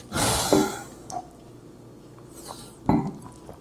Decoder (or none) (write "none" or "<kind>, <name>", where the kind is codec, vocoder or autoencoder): none